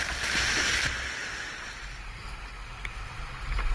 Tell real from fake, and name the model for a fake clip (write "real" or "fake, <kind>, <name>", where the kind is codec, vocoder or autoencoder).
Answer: real